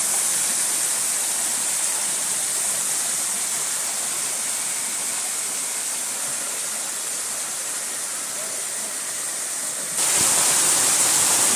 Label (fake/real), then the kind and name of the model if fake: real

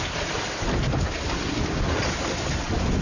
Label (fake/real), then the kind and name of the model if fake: real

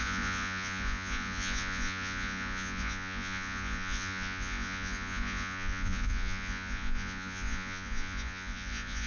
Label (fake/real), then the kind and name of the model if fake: fake, vocoder, Vocos